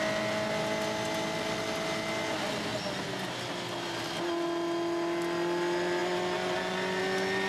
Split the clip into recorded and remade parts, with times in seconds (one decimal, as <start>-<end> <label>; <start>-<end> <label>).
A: 0.0-7.5 recorded